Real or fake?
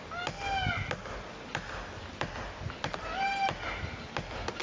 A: real